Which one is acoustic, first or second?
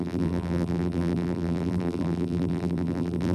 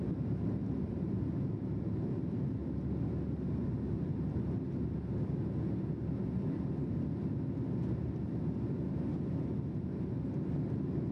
second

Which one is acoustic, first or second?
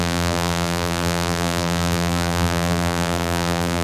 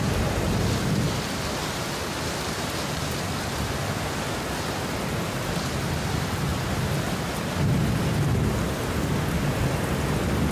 second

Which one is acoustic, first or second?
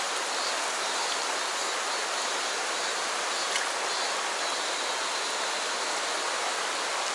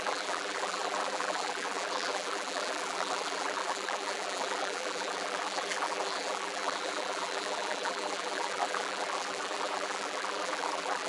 first